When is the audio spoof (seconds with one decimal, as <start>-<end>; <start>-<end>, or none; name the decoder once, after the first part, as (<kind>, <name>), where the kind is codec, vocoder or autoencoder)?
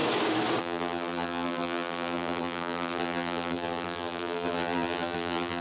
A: 0.6-5.6 (vocoder, BigVGAN v2)